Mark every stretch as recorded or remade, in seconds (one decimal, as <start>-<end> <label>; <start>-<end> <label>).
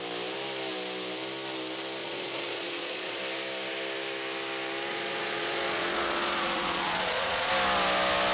0.0-2.0 recorded; 2.0-3.2 remade; 3.2-4.9 recorded; 4.9-7.5 remade; 7.5-8.3 recorded